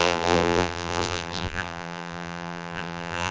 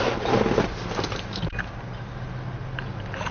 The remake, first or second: first